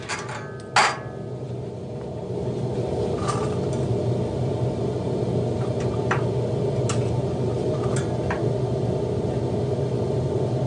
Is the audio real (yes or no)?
yes